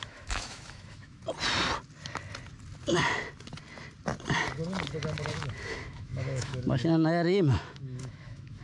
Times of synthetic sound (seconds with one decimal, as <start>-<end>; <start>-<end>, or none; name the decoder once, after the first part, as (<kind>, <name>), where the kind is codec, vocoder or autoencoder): 0.0-1.2 (autoencoder, DAC-VAE); 5.3-8.6